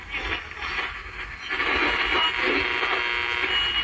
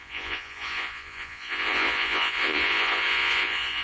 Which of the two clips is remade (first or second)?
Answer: second